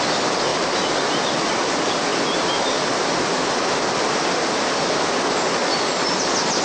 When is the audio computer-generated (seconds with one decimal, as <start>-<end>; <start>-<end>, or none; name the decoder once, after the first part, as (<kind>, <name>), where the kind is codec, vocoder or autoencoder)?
none